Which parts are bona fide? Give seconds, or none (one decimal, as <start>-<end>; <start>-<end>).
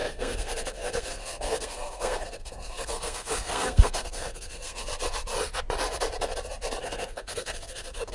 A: 4.9-6.8